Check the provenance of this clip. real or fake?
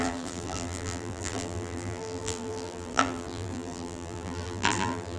fake